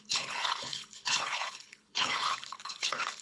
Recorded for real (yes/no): no